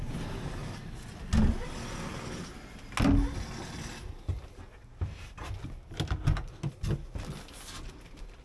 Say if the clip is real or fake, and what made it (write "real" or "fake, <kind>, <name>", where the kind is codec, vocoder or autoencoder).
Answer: real